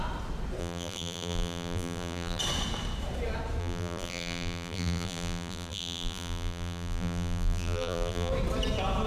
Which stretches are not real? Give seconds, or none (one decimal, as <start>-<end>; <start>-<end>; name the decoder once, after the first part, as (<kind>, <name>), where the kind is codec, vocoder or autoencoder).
0.6-2.4 (vocoder, BigVGAN v2); 3.6-8.3